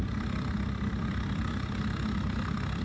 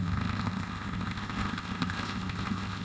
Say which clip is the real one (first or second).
first